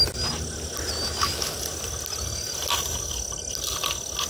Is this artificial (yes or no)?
no